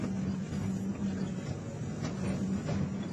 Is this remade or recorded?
recorded